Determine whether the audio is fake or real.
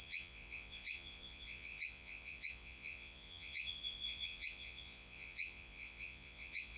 fake